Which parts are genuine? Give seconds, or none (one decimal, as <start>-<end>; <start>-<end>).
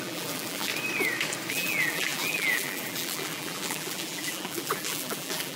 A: 0.7-1.5